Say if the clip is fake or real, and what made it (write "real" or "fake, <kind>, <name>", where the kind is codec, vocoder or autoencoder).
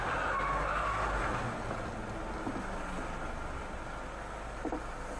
real